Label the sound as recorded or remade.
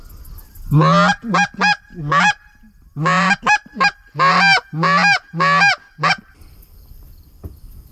recorded